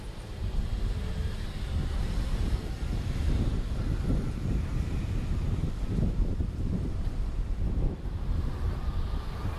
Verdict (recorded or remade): remade